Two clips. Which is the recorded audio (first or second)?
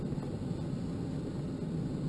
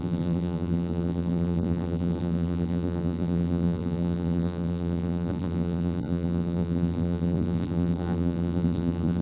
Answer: first